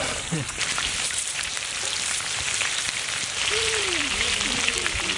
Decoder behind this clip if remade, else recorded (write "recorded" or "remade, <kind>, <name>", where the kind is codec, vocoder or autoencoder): remade, vocoder, BigVGAN v2